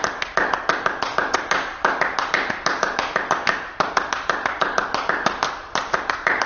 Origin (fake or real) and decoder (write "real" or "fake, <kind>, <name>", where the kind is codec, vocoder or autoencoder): real